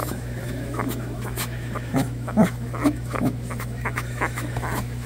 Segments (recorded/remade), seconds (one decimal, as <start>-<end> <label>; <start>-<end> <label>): 0.0-5.1 remade